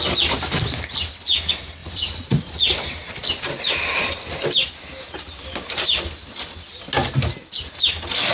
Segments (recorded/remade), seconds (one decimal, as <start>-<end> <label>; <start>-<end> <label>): 0.0-1.8 recorded; 1.8-2.5 remade; 2.5-8.3 recorded